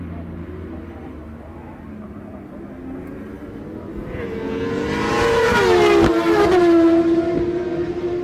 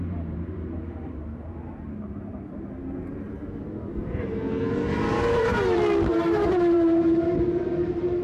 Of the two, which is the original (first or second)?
first